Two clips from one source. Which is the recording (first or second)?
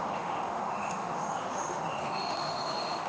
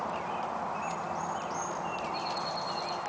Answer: second